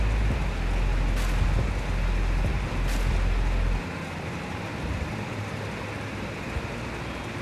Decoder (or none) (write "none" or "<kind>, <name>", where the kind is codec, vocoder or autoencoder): none